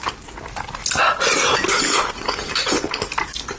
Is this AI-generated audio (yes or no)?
no